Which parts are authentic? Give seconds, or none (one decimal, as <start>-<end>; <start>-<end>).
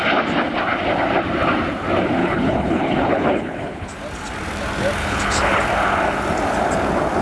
0.0-2.2; 3.9-5.0; 5.6-7.2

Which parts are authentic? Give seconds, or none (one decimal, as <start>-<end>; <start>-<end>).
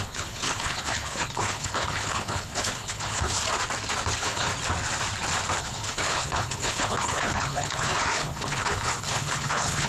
3.4-4.1; 4.5-5.6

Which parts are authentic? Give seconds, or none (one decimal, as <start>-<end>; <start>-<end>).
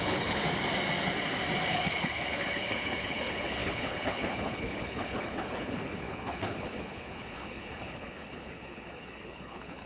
0.4-1.7